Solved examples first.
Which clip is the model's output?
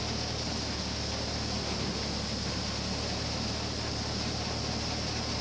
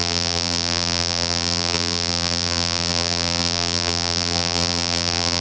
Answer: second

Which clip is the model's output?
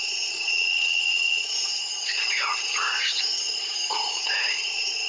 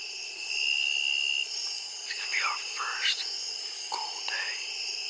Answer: first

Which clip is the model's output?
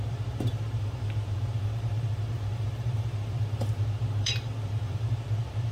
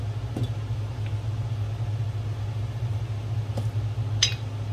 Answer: first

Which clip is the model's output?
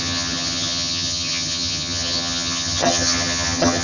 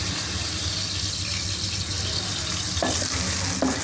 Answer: first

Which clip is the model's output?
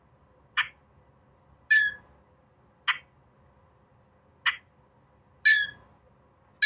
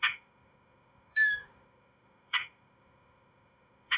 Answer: second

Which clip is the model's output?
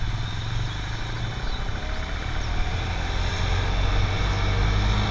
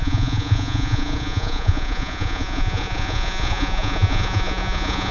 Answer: second